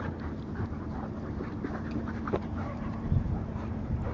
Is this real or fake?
fake